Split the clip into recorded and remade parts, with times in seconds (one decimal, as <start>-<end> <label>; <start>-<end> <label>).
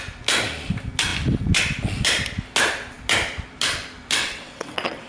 0.0-4.2 recorded; 4.2-5.1 remade